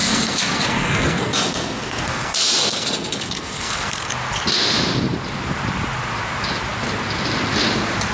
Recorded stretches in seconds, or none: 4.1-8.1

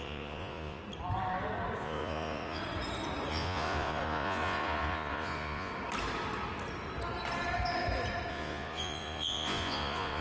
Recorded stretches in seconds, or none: 0.8-1.8; 2.6-3.3; 5.7-8.3

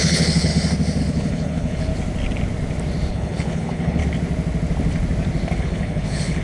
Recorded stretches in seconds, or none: 0.5-1.0; 1.9-3.1; 4.0-5.6

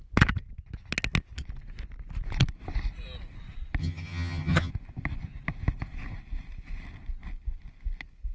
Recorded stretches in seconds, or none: 0.0-3.8; 4.7-8.3